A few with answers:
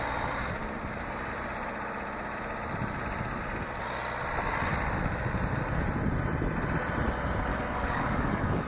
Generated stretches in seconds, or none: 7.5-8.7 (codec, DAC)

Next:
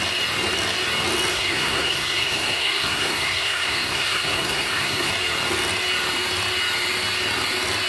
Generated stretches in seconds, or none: 1.3-5.1 (codec, SNAC)

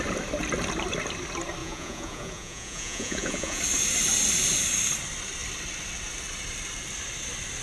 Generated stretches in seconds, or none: 1.6-3.6 (vocoder, Vocos)

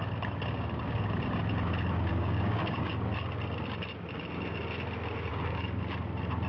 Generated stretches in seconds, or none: 2.1-2.9 (codec, DAC); 5.3-5.8

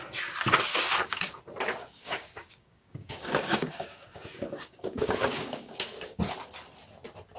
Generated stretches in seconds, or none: 0.7-1.4 (codec, DAC); 1.8-6.2